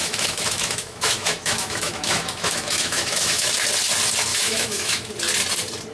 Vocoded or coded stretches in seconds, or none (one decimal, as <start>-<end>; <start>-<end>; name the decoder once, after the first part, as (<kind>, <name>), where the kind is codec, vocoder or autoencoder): 0.0-3.5 (autoencoder, DAC-VAE); 4.3-5.1